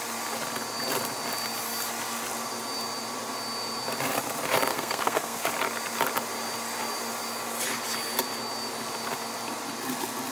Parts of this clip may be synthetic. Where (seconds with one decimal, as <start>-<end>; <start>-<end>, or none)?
4.7-5.5